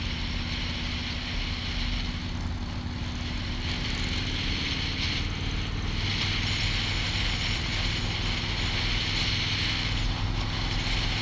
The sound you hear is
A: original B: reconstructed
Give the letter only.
A